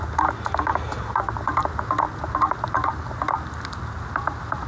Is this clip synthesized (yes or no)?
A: no